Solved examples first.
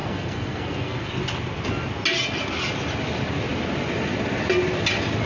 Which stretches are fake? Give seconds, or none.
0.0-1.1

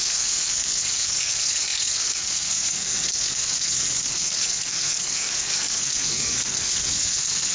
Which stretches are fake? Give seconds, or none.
0.0-7.5

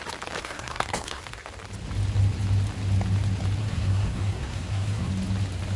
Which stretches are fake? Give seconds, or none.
0.4-1.2; 3.6-5.1